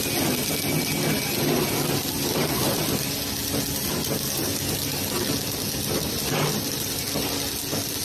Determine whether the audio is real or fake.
real